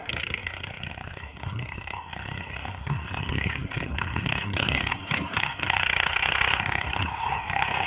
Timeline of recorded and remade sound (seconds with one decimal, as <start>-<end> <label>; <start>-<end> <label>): 0.0-7.9 remade